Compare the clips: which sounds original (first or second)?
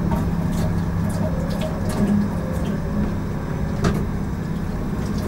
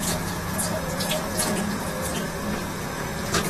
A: first